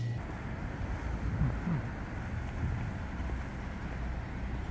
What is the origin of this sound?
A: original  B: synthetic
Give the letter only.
A